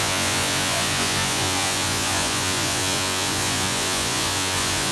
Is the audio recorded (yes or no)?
no